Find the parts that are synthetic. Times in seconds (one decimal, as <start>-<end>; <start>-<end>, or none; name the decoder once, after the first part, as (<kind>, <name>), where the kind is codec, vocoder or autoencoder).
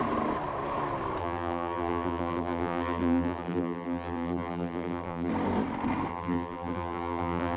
1.2-5.3 (vocoder, BigVGAN v2); 6.1-7.6